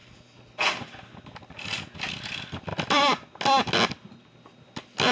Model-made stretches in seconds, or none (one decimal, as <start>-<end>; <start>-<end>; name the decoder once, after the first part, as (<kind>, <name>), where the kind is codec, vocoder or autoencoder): none